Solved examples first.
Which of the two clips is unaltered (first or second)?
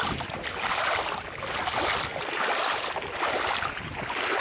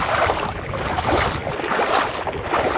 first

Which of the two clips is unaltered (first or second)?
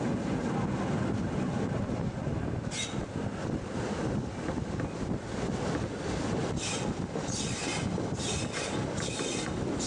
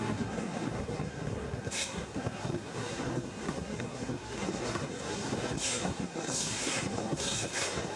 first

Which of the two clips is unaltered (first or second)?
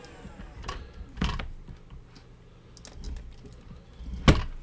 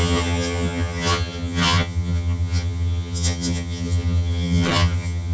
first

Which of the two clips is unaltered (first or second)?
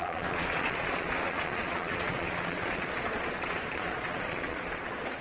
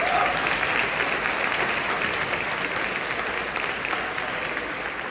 second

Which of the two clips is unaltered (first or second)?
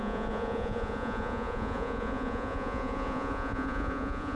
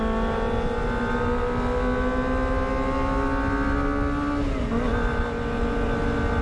second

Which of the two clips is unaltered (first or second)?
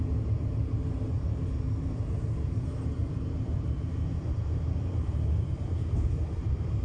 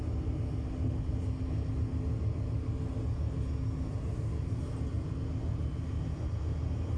second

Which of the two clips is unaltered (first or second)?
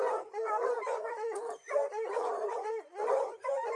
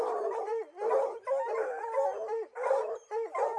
second